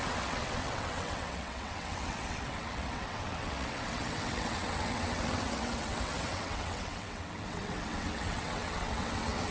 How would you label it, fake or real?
fake